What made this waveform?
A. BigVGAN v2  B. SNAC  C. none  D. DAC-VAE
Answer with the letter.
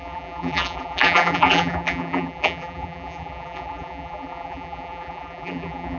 A